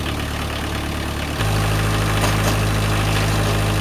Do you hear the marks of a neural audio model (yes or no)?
no